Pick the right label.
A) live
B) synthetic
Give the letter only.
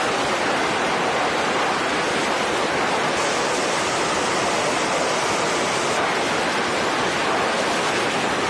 A